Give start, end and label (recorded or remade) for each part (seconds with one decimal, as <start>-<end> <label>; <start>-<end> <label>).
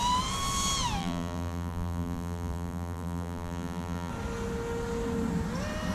0.0-1.0 recorded; 1.0-4.1 remade; 4.1-5.9 recorded